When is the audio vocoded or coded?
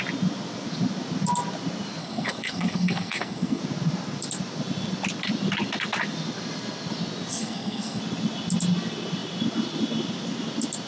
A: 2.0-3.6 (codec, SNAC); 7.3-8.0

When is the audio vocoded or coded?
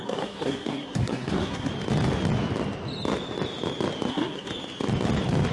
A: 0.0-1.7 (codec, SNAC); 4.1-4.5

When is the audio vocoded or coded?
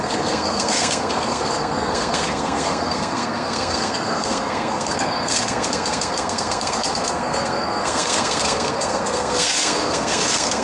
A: 0.0-10.6 (codec, SNAC)